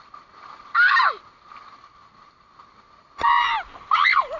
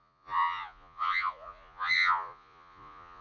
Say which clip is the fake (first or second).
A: second